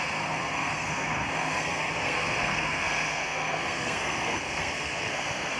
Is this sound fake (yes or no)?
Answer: yes